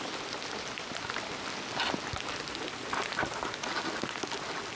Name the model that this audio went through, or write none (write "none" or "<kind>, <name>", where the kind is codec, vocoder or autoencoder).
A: none